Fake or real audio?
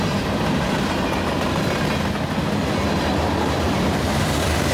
real